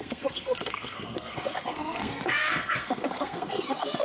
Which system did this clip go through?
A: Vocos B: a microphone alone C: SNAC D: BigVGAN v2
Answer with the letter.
C